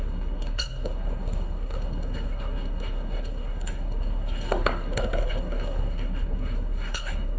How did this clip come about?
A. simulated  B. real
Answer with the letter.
A